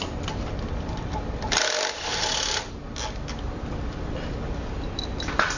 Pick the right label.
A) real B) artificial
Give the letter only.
A